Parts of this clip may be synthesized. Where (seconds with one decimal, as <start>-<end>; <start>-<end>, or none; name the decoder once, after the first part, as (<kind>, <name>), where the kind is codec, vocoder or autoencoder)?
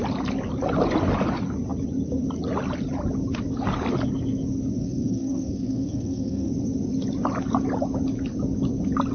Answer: 4.8-6.5 (codec, SNAC)